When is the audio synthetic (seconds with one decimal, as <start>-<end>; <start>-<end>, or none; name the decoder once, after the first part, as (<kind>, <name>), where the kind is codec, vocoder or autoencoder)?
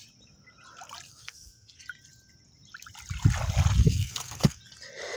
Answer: 1.1-1.8 (codec, SNAC); 3.8-4.6